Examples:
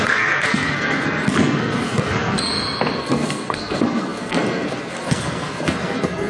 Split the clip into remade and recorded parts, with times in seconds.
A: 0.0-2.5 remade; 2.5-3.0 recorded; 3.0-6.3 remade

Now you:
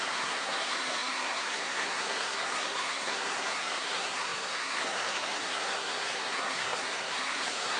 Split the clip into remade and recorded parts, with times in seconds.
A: 0.0-7.8 remade

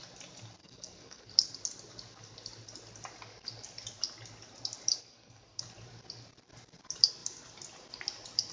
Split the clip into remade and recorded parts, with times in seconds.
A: 0.0-0.6 recorded; 0.6-1.3 remade; 1.3-5.0 recorded; 5.0-5.6 remade; 5.6-8.5 recorded

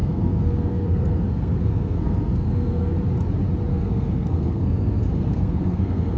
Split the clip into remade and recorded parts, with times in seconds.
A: 0.0-2.9 remade; 2.9-3.7 recorded; 3.7-6.2 remade

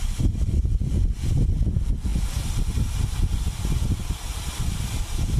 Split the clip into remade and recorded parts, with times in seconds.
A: 0.0-5.4 recorded